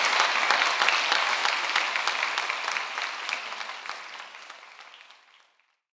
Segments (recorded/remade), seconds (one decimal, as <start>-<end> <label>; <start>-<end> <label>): 0.0-5.9 recorded